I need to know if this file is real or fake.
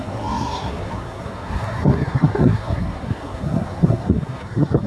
fake